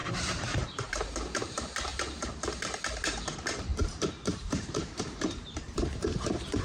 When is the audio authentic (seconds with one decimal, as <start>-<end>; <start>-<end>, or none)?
none